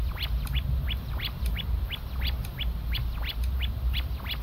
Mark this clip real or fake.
real